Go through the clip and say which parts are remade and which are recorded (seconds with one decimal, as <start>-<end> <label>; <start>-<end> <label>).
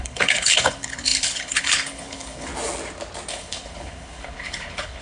0.0-2.5 remade; 2.5-3.3 recorded; 3.3-5.0 remade